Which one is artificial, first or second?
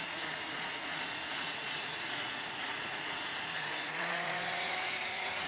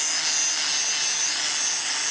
first